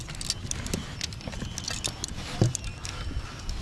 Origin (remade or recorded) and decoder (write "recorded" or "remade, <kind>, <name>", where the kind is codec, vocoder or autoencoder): recorded